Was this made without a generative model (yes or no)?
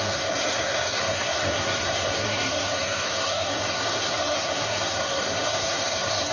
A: no